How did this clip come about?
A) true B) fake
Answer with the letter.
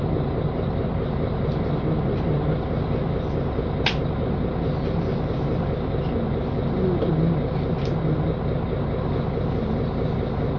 A